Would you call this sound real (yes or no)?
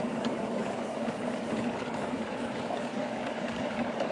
no